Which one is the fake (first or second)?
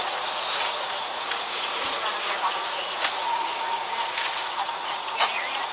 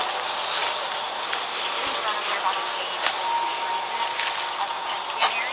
first